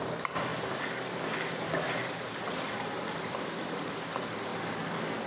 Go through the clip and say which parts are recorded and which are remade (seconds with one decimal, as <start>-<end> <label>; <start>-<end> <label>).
0.0-0.5 remade; 0.5-3.7 recorded; 3.7-4.5 remade; 4.5-5.3 recorded